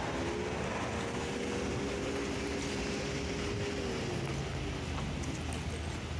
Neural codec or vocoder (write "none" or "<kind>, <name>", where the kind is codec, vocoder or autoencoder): none